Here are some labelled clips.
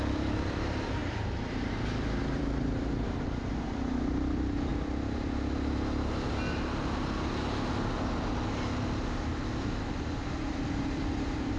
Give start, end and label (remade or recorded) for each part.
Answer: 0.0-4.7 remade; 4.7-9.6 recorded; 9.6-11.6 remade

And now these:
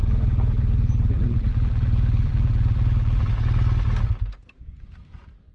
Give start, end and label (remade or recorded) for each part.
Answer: 0.0-3.3 remade; 3.3-5.5 recorded

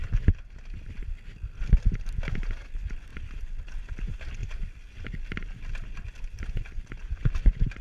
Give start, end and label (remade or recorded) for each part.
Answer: 0.0-3.1 recorded; 3.1-3.7 remade; 3.7-4.4 recorded; 4.4-5.1 remade; 5.1-7.8 recorded

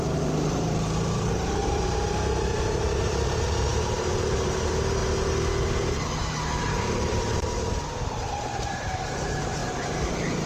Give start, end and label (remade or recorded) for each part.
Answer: 0.0-5.0 remade; 5.0-6.6 recorded; 6.6-10.5 remade

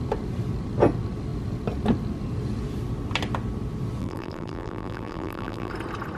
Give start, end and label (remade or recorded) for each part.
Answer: 0.0-4.0 recorded; 4.0-5.7 remade; 5.7-6.2 recorded

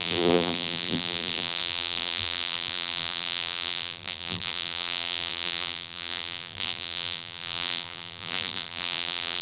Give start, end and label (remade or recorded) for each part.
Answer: 0.0-9.4 remade

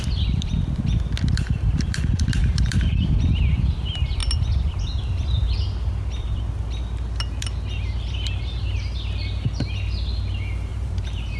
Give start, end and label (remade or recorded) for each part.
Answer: 0.0-2.4 recorded; 2.4-3.1 remade; 3.1-10.7 recorded; 10.7-11.4 remade

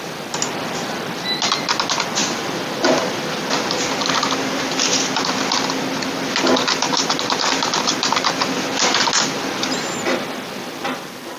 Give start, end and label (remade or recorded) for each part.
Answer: 0.0-6.8 recorded; 6.8-8.4 remade; 8.4-11.4 recorded